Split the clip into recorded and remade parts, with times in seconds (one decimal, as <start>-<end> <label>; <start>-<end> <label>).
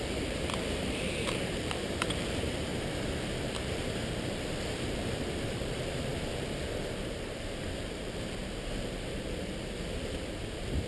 0.0-6.1 remade; 6.1-6.8 recorded; 6.8-10.9 remade